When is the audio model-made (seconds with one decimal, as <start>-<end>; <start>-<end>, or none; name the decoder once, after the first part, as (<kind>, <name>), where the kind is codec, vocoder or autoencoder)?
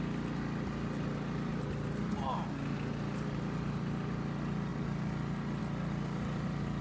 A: none